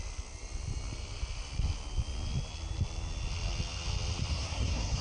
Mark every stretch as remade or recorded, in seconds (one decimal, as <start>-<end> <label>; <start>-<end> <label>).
0.0-4.3 recorded; 4.3-5.0 remade

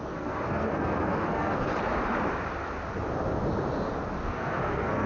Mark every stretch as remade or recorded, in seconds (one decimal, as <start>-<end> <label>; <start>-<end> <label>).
0.0-1.7 remade; 1.7-4.3 recorded; 4.3-5.1 remade